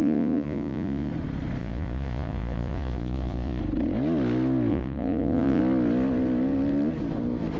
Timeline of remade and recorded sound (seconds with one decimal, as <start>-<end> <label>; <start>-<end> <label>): 0.0-1.1 remade; 1.1-1.6 recorded; 1.6-3.6 remade; 3.6-4.7 recorded; 4.7-5.6 remade; 5.6-7.6 recorded

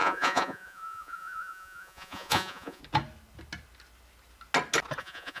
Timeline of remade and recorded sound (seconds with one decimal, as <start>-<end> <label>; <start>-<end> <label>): 0.0-2.8 remade; 2.8-5.0 recorded; 5.0-5.4 remade

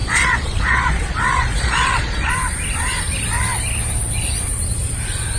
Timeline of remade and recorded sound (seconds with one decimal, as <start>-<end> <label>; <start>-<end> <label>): 0.0-2.3 remade; 2.3-5.4 recorded

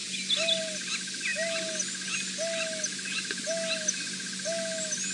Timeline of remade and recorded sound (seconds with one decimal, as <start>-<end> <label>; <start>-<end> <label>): 0.0-5.1 recorded

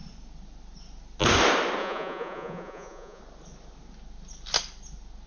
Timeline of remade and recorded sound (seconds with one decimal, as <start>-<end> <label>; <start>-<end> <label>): 0.0-1.8 recorded; 1.8-3.2 remade; 3.2-5.3 recorded

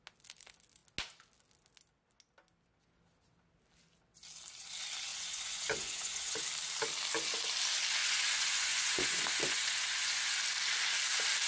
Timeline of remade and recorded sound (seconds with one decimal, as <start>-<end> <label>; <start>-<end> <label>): 0.0-5.1 recorded; 5.1-6.4 remade; 6.4-8.0 recorded; 8.0-10.3 remade; 10.3-11.5 recorded